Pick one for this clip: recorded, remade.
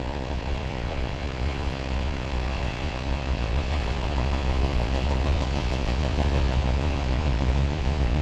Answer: remade